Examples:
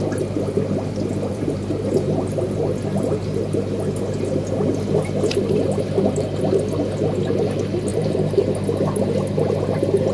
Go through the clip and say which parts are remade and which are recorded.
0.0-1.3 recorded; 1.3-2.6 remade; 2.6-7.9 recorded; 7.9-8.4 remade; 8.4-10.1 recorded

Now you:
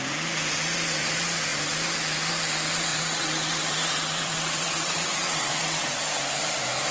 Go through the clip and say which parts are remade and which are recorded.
0.0-2.9 recorded; 2.9-6.0 remade; 6.0-6.9 recorded